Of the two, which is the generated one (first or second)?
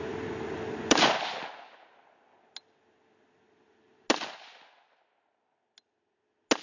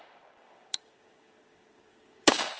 second